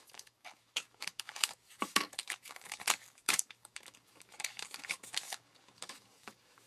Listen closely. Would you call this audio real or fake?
fake